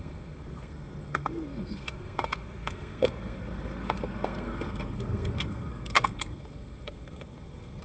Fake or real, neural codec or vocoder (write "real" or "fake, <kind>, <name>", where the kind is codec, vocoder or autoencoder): fake, codec, SNAC